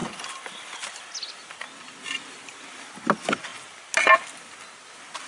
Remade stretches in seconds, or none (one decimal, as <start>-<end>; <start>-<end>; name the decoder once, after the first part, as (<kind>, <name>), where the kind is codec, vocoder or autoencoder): none